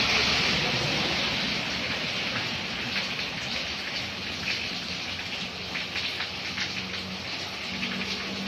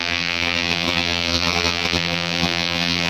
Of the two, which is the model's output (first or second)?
second